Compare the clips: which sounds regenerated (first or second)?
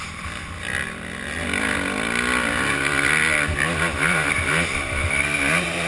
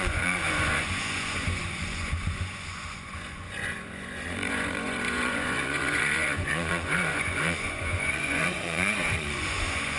second